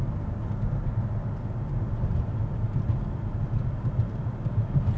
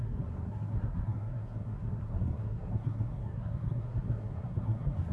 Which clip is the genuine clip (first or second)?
first